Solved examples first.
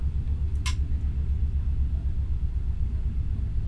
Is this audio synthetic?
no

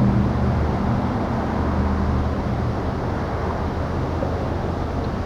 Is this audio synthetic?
no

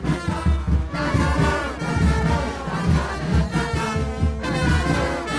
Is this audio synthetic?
no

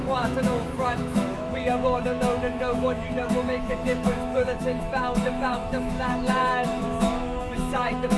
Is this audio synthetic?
yes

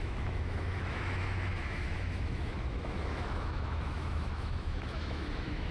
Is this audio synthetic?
yes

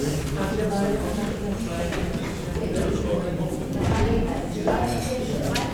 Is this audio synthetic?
no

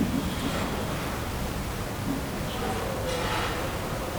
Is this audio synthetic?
no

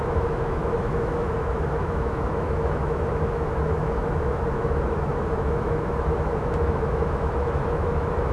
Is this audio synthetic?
yes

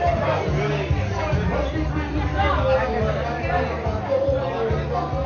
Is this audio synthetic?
no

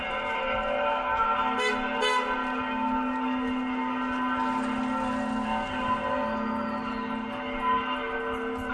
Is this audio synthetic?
no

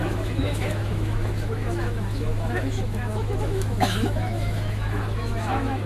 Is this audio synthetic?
yes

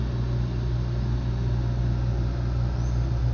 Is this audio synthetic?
no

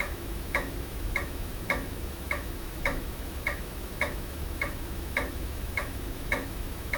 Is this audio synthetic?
yes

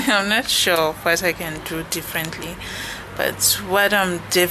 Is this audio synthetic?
no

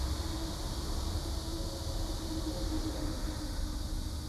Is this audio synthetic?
no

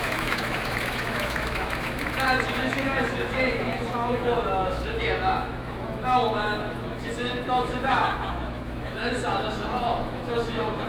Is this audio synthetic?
yes